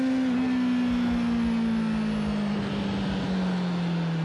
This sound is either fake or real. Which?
real